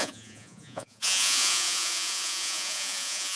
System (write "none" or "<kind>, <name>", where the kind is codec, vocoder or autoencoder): vocoder, Vocos